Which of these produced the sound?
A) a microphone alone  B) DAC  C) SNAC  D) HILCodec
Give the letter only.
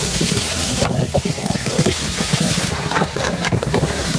C